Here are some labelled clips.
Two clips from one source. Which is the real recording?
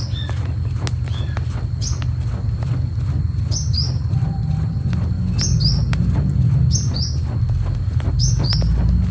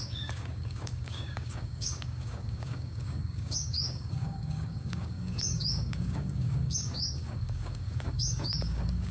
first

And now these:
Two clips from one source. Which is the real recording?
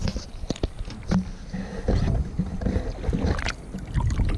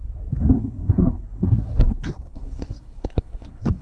first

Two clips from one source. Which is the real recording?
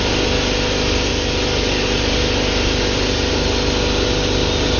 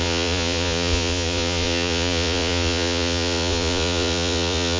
first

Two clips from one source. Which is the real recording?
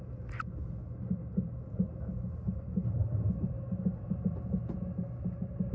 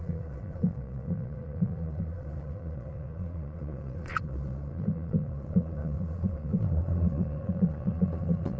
first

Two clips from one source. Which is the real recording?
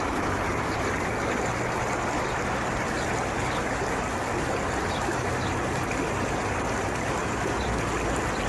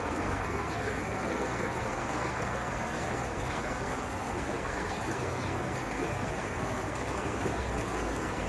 first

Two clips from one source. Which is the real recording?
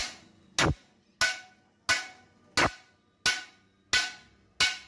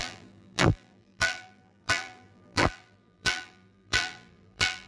first